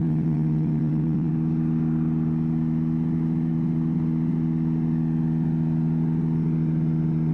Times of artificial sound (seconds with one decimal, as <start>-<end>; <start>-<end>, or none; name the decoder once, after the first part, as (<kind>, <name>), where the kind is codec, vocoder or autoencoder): 0.0-1.3 (vocoder, WaveNeXt)